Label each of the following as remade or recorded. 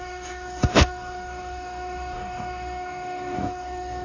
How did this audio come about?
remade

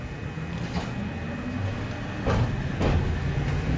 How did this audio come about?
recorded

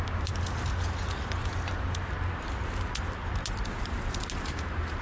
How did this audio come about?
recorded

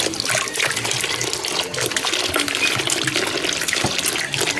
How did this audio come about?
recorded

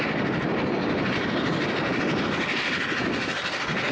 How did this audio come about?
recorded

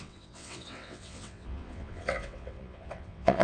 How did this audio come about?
remade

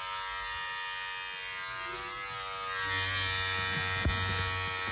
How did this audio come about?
recorded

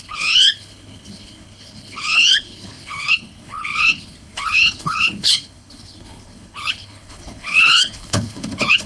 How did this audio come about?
remade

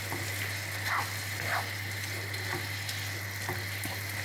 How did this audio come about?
recorded